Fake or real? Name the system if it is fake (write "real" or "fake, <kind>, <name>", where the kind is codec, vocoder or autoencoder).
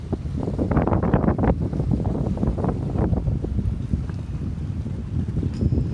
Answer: real